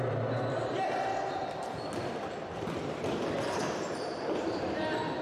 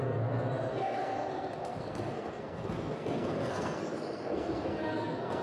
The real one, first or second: first